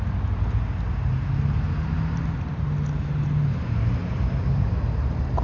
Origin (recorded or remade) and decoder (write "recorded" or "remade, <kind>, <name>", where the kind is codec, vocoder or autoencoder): recorded